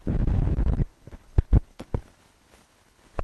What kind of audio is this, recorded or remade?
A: remade